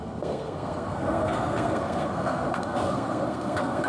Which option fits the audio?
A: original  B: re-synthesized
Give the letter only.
B